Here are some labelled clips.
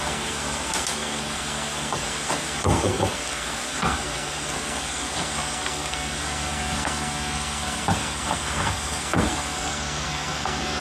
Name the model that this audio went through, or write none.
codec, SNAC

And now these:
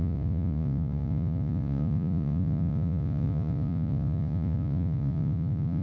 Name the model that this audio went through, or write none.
vocoder, Vocos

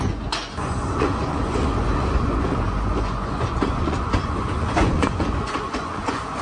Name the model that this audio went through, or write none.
vocoder, Vocos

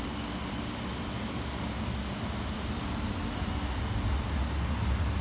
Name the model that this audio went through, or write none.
none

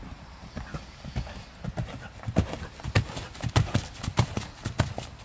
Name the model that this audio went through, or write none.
none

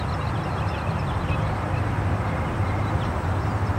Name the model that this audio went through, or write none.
none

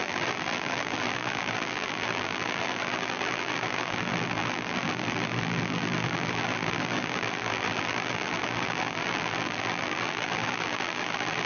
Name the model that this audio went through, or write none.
vocoder, BigVGAN v2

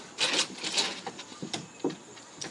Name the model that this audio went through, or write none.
none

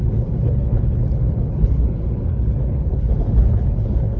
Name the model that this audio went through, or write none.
codec, HILCodec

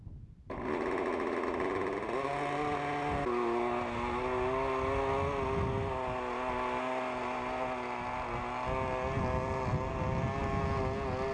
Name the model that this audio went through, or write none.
none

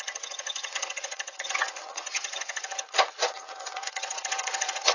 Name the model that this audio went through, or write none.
vocoder, WaveNeXt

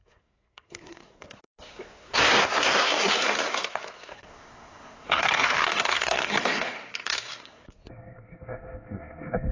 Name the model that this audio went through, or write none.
codec, SNAC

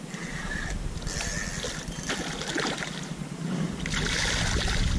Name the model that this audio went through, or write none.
none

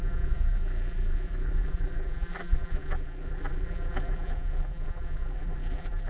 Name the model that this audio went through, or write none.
vocoder, BigVGAN v2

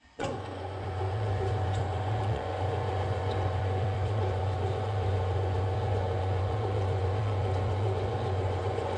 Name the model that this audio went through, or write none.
vocoder, Vocos